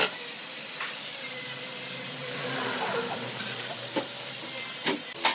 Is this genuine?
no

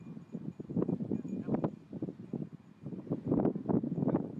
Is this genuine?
yes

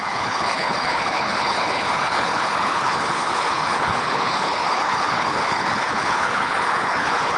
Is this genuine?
no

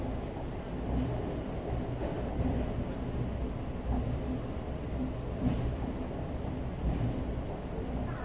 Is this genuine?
yes